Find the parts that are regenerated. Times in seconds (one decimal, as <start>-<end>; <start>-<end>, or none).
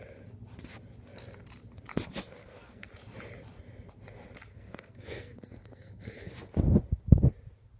2.4-2.9; 4.5-6.3